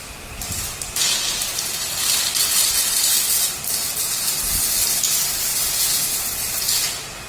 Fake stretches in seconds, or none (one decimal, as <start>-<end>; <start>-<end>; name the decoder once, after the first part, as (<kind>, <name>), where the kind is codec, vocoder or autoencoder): 5.5-6.2 (vocoder, BigVGAN v2)